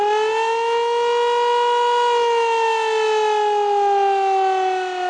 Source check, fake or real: real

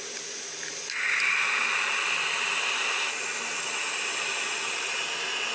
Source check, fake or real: real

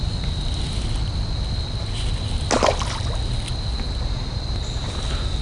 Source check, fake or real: real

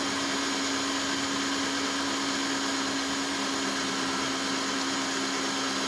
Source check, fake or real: real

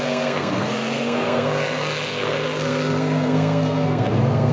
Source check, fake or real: fake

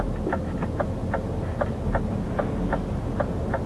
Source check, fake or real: real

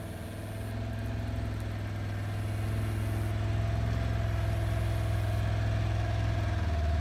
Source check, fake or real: real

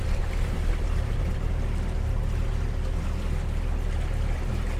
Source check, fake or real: real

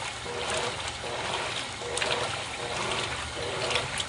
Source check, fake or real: real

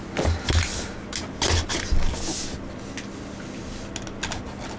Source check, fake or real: real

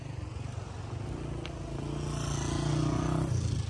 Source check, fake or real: real